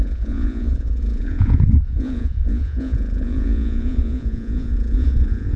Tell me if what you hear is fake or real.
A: fake